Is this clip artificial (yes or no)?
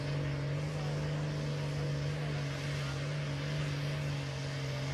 no